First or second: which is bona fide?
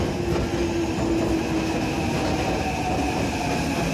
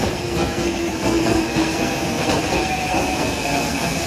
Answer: first